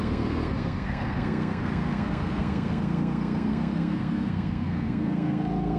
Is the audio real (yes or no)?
no